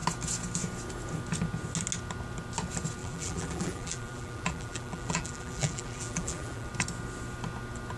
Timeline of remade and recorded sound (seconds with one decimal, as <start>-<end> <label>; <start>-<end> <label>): 0.0-3.0 recorded; 3.0-6.7 remade; 6.7-8.0 recorded

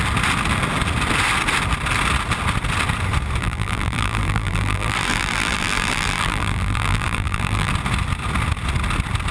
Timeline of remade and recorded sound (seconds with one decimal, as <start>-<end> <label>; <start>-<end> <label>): 0.0-3.4 recorded; 3.4-7.7 remade; 7.7-9.3 recorded